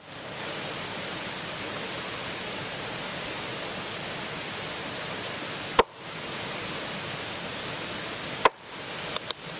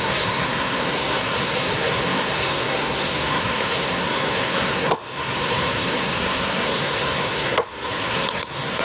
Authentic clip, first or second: first